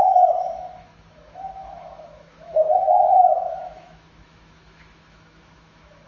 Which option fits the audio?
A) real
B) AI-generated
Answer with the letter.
B